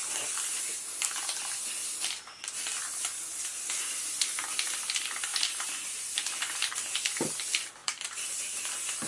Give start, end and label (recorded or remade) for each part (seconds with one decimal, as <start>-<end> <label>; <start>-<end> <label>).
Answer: 0.0-1.8 recorded; 1.8-2.6 remade; 2.6-5.3 recorded; 5.3-6.0 remade; 6.0-7.8 recorded; 7.8-8.6 remade; 8.6-9.1 recorded